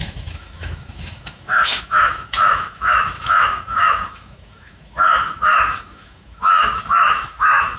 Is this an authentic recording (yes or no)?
no